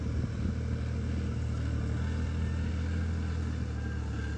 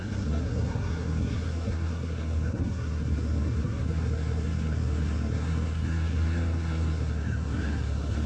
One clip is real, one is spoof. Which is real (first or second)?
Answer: first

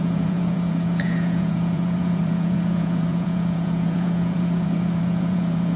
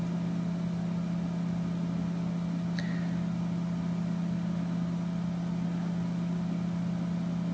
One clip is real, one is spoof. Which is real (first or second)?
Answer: second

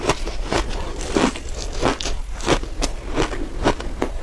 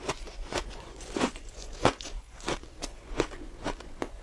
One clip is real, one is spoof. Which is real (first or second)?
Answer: first